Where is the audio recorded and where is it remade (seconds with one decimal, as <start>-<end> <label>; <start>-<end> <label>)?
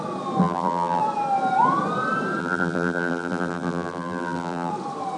0.0-0.4 recorded; 0.4-1.0 remade; 1.0-2.4 recorded; 2.4-4.7 remade; 4.7-5.2 recorded